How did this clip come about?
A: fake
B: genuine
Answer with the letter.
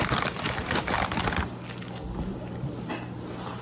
B